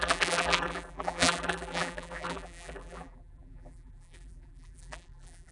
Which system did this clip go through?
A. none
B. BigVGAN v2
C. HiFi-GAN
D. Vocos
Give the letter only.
B